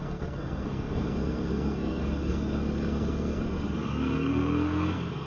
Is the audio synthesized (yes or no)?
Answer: yes